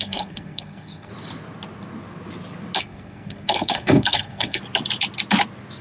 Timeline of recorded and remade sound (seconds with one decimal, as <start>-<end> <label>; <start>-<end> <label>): 0.0-1.1 remade; 1.1-2.8 recorded; 2.8-4.6 remade; 4.6-5.8 recorded